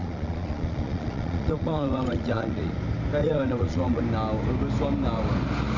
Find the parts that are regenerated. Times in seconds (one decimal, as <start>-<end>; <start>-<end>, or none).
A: 0.0-2.7; 3.2-4.0